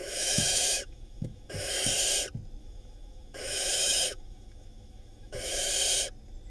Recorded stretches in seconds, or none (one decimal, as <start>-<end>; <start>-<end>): 1.9-2.6; 5.7-6.5